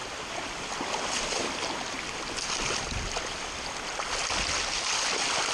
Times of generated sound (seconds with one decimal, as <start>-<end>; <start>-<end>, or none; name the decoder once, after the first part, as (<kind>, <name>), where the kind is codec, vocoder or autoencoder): none